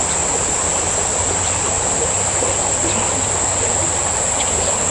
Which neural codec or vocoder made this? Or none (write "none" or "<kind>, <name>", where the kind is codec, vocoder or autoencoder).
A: none